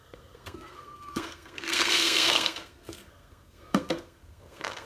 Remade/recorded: remade